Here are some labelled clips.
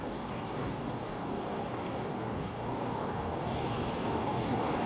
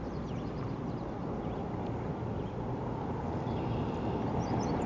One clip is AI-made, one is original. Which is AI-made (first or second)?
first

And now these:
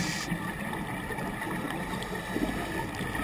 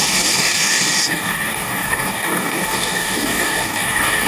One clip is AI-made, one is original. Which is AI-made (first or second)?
second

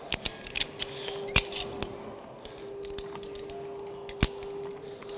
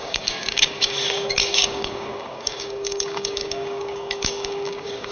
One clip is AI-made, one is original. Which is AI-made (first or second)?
second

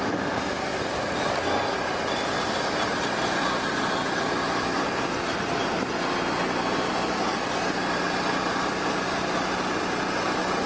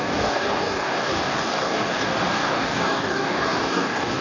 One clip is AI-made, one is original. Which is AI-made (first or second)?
second